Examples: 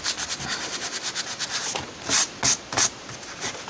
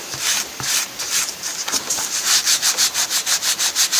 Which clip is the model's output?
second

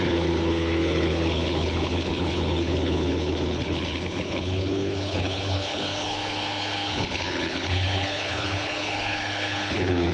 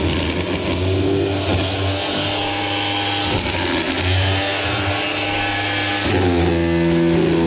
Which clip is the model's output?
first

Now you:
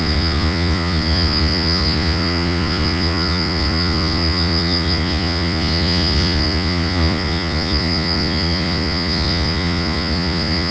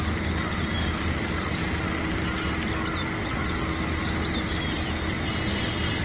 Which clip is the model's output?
first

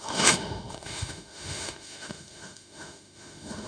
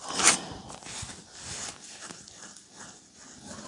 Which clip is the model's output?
first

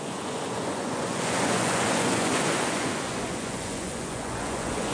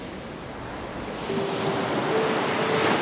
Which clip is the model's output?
first